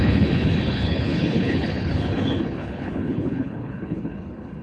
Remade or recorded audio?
remade